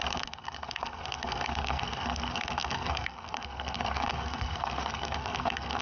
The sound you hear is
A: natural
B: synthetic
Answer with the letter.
B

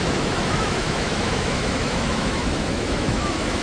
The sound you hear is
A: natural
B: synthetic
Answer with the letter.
B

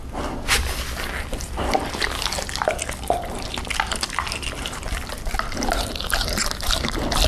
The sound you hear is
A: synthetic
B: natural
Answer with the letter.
B